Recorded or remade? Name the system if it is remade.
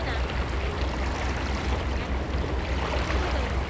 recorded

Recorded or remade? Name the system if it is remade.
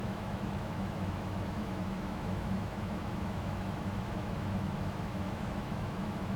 remade, autoencoder, DAC-VAE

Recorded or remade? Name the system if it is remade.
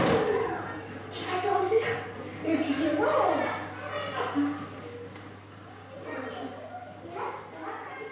recorded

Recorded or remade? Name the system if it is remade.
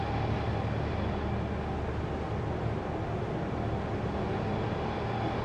recorded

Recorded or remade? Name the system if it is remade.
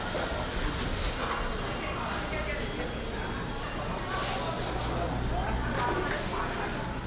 recorded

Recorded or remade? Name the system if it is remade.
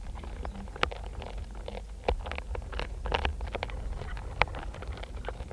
recorded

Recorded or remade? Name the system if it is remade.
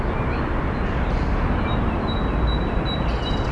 recorded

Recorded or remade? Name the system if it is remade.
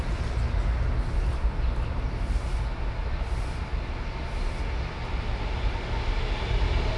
recorded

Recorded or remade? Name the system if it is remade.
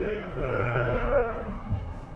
remade, codec, SNAC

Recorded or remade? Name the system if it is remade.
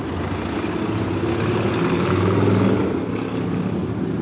recorded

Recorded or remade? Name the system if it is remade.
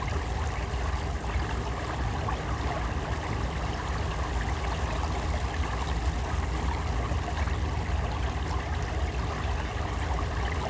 recorded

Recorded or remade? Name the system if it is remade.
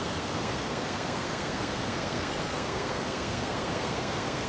remade, codec, SNAC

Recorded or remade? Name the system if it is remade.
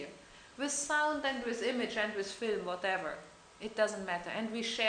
recorded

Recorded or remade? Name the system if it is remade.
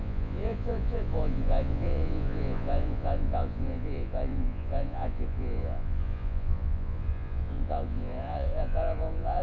remade, vocoder, Vocos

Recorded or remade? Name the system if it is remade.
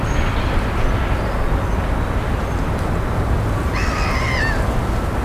recorded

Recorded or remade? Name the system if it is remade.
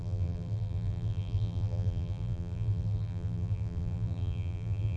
remade, vocoder, BigVGAN v2